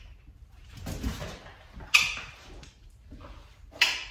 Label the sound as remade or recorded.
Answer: recorded